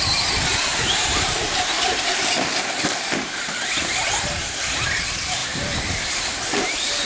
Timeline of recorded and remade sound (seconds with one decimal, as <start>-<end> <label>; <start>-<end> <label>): 0.0-0.7 recorded; 0.7-4.5 remade; 4.5-5.4 recorded; 5.4-6.1 remade; 6.1-7.1 recorded